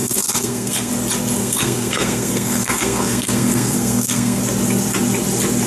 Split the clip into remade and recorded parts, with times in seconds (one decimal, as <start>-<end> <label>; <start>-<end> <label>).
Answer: 0.0-0.9 remade; 0.9-1.4 recorded; 1.4-4.4 remade; 4.4-5.7 recorded